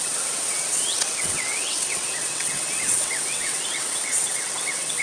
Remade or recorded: remade